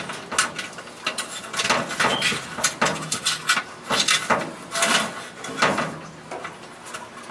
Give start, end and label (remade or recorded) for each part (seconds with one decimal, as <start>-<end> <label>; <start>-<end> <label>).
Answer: 0.0-7.3 recorded